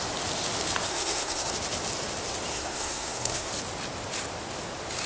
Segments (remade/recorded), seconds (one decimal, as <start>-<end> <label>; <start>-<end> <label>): 0.0-0.9 recorded; 0.9-1.5 remade; 1.5-2.5 recorded; 2.5-3.5 remade; 3.5-5.1 recorded